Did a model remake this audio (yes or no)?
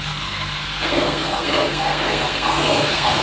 yes